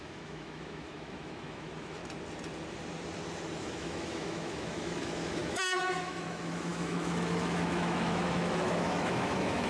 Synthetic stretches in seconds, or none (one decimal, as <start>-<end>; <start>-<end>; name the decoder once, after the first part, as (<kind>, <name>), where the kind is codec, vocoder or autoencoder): 0.0-2.0 (autoencoder, DAC-VAE); 3.6-9.7